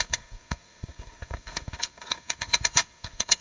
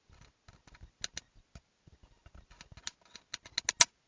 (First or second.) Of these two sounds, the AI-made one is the first